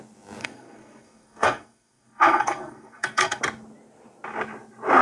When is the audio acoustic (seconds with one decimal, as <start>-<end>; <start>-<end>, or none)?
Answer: 0.0-0.4; 3.4-5.0